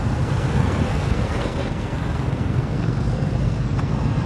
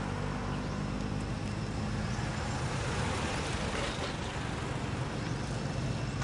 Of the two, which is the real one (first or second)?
second